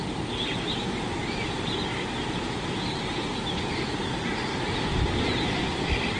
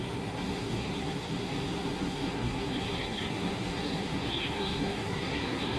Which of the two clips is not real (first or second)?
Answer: second